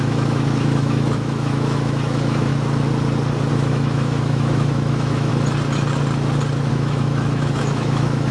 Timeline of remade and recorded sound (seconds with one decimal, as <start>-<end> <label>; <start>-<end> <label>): 0.0-2.5 remade; 2.5-3.5 recorded; 3.5-5.3 remade; 5.3-6.7 recorded; 6.7-8.3 remade